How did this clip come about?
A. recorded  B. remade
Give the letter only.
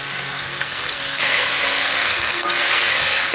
B